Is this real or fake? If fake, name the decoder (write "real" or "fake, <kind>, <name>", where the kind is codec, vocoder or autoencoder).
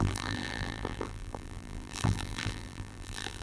fake, vocoder, BigVGAN v2